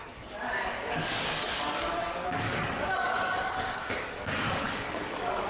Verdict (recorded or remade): remade